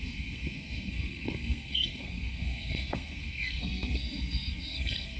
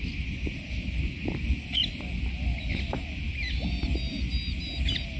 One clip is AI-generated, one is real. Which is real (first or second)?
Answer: second